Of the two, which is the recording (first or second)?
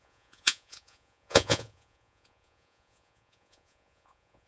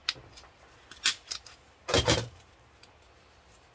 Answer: second